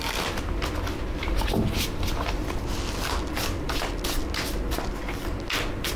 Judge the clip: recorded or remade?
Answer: recorded